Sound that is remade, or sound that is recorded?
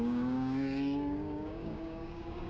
remade